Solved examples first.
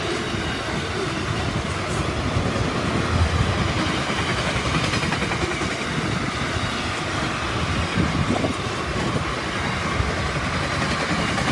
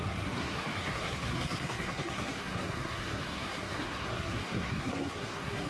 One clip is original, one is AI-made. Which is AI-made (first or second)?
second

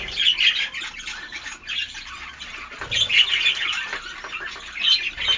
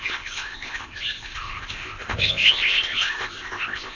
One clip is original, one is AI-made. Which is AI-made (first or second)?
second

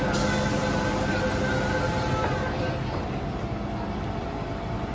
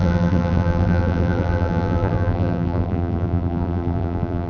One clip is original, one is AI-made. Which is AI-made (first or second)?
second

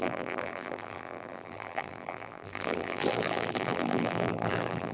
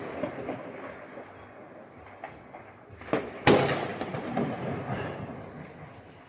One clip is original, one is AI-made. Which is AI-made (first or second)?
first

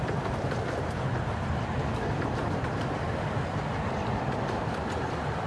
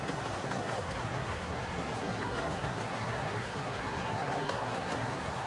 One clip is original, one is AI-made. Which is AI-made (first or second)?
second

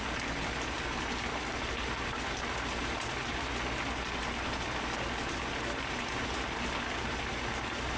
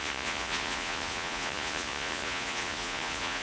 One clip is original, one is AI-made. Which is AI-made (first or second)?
second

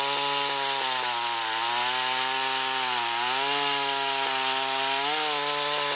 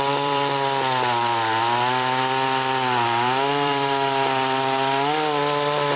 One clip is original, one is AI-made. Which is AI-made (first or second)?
second